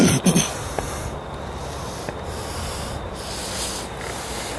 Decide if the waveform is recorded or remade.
recorded